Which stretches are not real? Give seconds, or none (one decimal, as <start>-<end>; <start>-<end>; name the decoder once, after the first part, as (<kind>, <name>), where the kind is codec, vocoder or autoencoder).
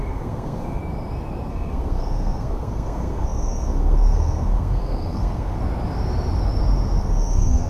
0.0-0.8 (codec, SNAC); 1.5-5.6; 7.0-7.7